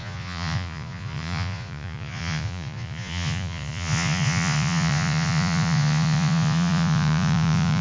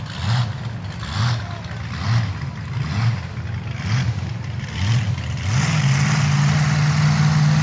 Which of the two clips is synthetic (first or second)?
first